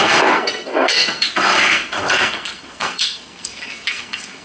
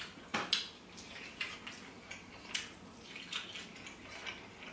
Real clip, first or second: second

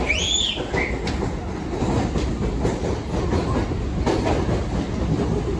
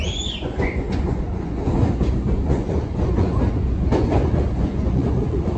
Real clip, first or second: first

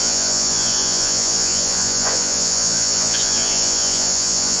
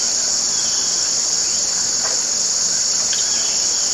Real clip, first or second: second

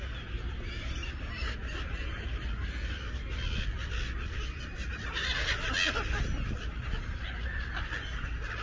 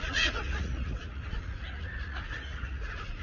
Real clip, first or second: first